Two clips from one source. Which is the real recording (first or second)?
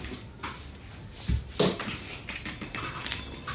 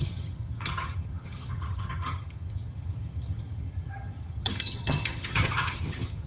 first